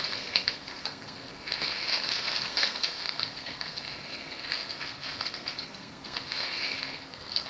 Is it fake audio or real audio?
fake